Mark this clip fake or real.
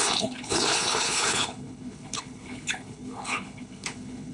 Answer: fake